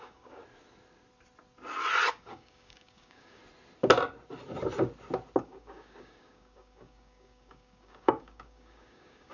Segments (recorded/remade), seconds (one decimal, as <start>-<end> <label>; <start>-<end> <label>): 0.0-0.4 remade; 0.4-2.1 recorded; 2.1-3.4 remade; 3.4-5.4 recorded; 5.4-9.3 remade